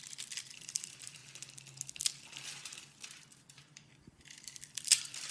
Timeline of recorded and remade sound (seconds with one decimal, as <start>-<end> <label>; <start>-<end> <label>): 0.0-1.2 remade; 1.2-3.2 recorded; 3.2-5.3 remade